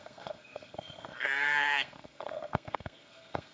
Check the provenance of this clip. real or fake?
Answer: fake